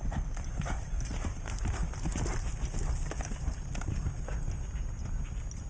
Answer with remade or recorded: recorded